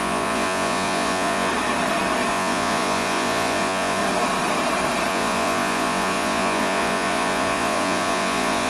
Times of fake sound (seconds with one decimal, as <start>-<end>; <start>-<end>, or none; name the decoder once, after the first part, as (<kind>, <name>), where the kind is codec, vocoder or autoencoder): 0.0-1.5 (vocoder, Vocos); 2.3-4.0; 5.1-8.7

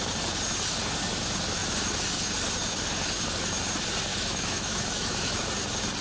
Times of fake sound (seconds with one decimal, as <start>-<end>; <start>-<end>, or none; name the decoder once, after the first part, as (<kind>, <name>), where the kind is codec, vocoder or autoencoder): 4.1-5.4 (autoencoder, DAC-VAE)

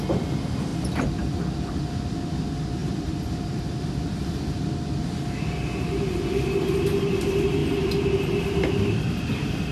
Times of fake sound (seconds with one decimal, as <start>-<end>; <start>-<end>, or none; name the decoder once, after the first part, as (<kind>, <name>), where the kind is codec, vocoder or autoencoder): 0.7-1.3 (vocoder, BigVGAN v2); 2.8-3.6

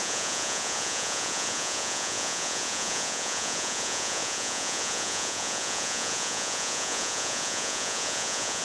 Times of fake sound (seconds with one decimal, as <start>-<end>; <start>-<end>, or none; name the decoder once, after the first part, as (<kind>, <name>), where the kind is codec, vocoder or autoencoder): 0.0-8.6 (vocoder, Vocos)

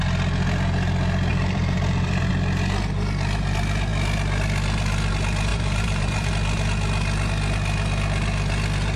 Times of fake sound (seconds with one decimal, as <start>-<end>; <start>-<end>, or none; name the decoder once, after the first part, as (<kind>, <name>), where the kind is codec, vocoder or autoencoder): 1.3-2.3 (vocoder, BigVGAN v2); 5.5-6.3